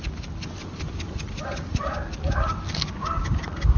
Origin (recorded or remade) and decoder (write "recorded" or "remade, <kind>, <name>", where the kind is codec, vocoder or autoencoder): recorded